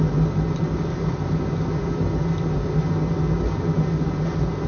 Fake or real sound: real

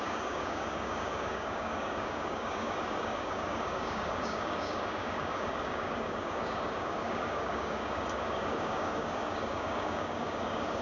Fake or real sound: fake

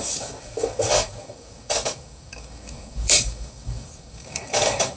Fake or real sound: fake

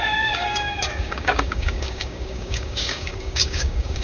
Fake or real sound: fake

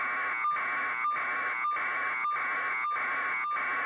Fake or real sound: real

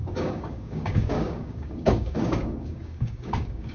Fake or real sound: fake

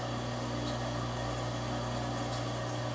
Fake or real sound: real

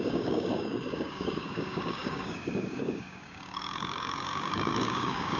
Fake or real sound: fake